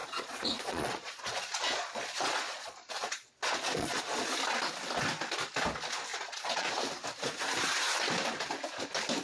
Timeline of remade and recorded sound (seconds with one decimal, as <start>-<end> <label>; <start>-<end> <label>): 0.0-4.0 remade; 4.0-6.1 recorded; 6.1-6.7 remade; 6.7-9.2 recorded